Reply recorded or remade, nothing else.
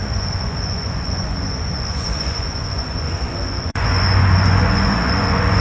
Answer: remade